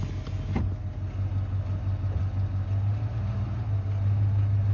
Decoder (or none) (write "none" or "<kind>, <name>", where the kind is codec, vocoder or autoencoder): none